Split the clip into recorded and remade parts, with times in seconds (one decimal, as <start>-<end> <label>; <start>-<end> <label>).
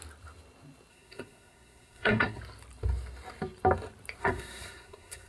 0.0-0.9 recorded; 0.9-2.4 remade; 2.4-4.2 recorded; 4.2-5.3 remade